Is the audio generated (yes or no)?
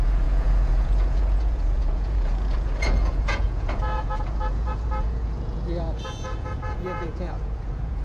yes